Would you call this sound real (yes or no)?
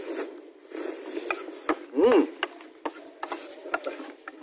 yes